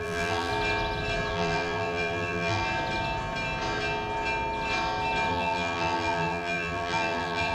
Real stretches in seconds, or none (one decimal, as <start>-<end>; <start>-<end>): 0.5-1.3; 2.6-5.3